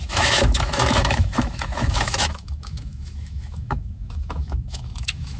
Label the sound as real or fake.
fake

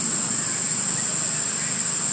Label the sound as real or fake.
real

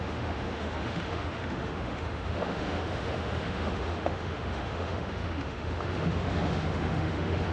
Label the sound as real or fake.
fake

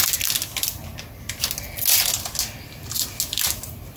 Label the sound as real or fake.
real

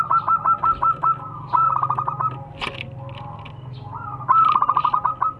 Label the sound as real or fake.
real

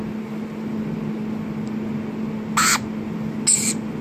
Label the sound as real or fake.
real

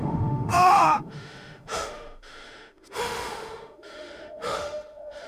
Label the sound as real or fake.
fake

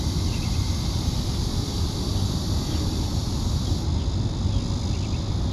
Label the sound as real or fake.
real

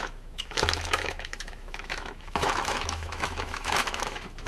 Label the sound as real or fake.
fake